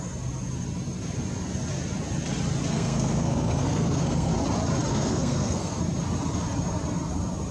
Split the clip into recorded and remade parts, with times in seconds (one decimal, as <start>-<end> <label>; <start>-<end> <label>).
0.0-2.7 recorded; 2.7-4.3 remade; 4.3-4.9 recorded; 4.9-5.8 remade; 5.8-7.5 recorded